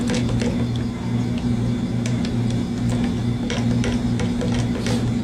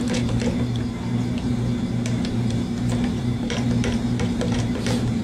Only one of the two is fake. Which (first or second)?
second